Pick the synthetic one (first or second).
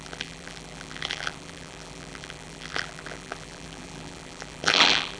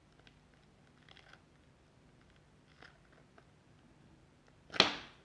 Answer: first